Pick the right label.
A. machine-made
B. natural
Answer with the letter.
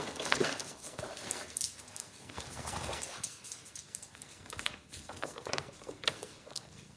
A